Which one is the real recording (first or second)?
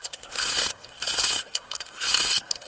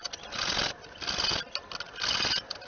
second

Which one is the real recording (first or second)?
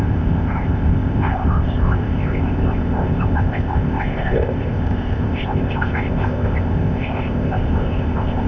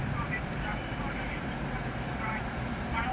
second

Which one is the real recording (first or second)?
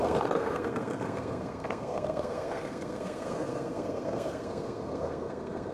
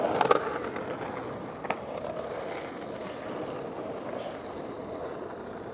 second